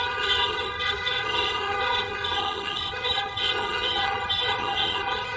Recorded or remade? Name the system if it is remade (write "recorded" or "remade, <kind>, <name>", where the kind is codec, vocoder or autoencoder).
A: remade, vocoder, HiFi-GAN